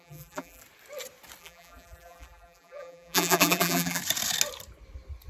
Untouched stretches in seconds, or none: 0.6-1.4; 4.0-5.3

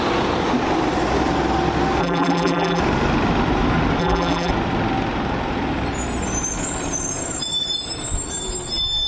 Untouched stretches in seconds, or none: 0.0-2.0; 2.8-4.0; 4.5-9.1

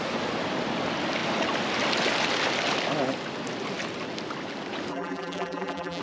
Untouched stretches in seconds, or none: 0.0-4.9

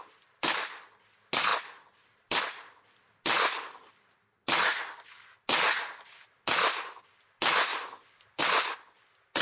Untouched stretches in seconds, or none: 0.0-1.5; 2.4-7.7; 8.4-9.4

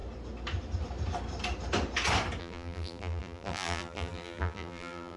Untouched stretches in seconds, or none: 0.0-2.4